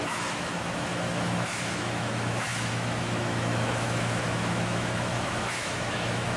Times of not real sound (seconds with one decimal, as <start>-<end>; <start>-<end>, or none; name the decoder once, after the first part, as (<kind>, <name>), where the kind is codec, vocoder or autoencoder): 0.0-6.4 (autoencoder, DAC-VAE)